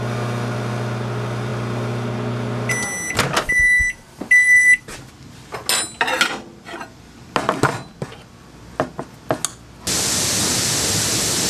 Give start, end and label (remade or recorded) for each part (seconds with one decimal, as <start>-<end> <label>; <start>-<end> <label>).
0.0-11.5 recorded